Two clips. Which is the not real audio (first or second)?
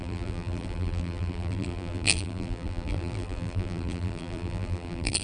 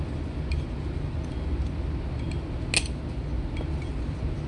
first